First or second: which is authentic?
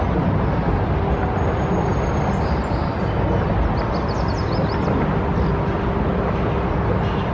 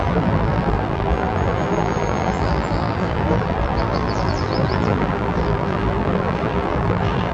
first